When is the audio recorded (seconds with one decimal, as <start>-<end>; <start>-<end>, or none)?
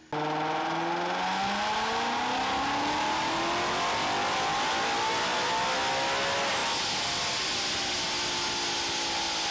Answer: 0.0-9.5